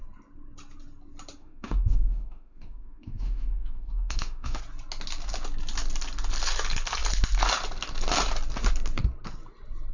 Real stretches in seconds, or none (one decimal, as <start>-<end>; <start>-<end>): 0.0-1.4; 4.6-9.9